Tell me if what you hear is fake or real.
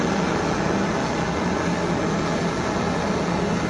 real